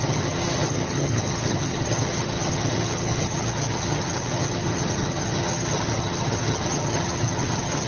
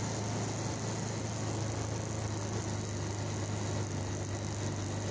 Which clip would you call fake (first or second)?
first